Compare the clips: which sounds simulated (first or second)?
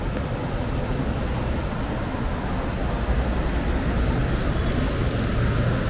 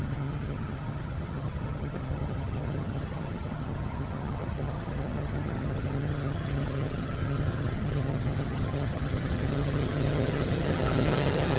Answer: second